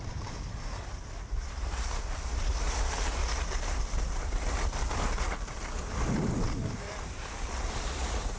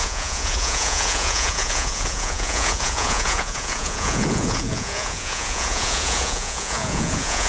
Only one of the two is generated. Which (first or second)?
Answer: second